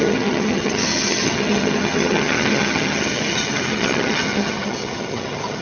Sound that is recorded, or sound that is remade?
remade